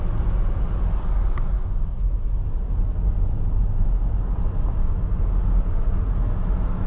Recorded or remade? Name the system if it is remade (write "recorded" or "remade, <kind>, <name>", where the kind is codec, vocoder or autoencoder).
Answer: recorded